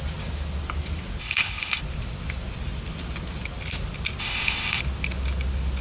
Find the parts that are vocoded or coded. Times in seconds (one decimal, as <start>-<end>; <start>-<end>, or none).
1.2-1.8; 4.2-4.8